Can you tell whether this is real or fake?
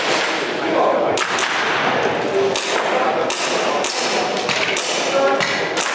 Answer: real